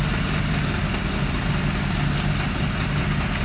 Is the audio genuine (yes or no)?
yes